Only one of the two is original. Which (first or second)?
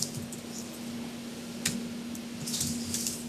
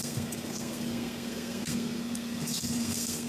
first